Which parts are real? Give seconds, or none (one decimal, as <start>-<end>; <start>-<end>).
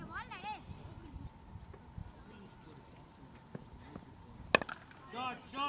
0.0-5.7